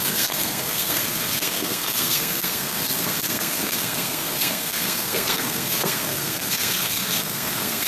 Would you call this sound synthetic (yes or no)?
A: yes